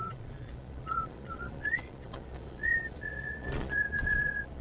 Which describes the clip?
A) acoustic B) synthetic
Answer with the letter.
B